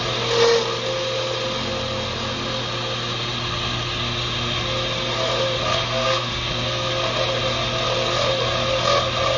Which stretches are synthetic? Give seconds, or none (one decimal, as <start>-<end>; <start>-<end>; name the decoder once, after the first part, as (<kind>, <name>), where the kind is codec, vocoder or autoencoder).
5.7-6.9 (codec, SNAC)

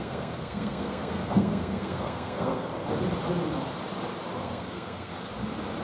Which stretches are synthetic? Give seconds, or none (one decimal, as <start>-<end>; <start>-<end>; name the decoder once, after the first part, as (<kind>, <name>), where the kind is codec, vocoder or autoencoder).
0.0-2.7 (codec, SNAC); 4.4-5.1

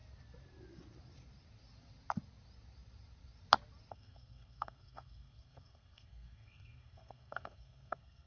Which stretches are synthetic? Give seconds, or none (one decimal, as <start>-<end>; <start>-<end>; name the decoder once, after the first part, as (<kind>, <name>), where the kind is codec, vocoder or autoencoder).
3.9-8.3 (codec, SNAC)

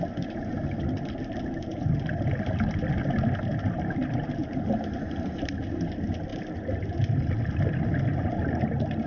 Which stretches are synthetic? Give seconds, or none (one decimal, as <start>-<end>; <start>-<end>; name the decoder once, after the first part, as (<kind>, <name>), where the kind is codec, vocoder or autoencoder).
4.4-5.5 (vocoder, BigVGAN v2)

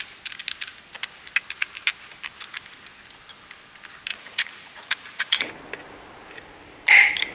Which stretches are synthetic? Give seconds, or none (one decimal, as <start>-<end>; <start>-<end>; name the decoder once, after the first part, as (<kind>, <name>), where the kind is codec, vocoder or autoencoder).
4.1-5.5 (vocoder, Vocos)

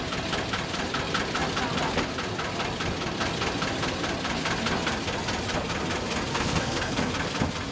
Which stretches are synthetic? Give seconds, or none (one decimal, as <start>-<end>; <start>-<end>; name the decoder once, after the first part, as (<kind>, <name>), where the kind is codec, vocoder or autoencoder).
6.3-7.1 (codec, SNAC)

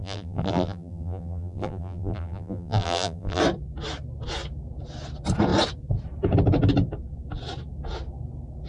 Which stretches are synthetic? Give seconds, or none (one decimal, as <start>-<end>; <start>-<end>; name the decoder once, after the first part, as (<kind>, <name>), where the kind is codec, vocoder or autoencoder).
0.0-3.4 (vocoder, BigVGAN v2)

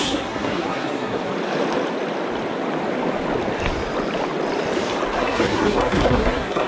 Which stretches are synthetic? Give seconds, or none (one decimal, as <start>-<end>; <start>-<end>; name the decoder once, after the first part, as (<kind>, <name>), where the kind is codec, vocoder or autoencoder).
0.0-1.2 (codec, SNAC); 5.2-6.7